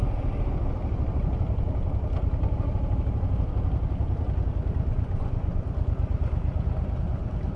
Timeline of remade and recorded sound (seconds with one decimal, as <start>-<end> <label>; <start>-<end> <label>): 0.0-4.9 recorded; 4.9-5.7 remade; 5.7-7.6 recorded